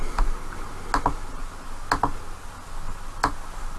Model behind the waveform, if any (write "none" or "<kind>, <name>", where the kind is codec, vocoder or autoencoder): none